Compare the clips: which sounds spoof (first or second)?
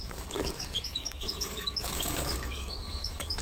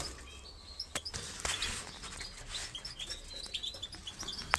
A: first